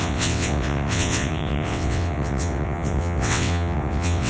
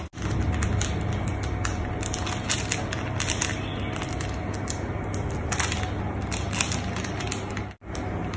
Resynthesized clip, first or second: first